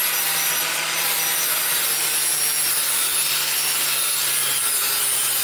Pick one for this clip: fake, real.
real